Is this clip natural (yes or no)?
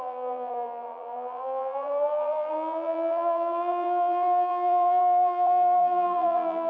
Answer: no